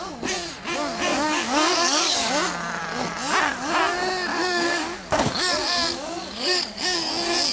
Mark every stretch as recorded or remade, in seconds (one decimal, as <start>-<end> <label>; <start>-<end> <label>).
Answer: 0.0-1.1 recorded; 1.1-2.3 remade; 2.3-4.3 recorded; 4.3-7.1 remade; 7.1-7.5 recorded